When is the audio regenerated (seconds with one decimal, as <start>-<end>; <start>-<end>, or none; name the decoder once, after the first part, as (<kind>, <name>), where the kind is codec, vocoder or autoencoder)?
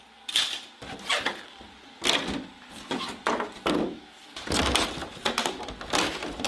none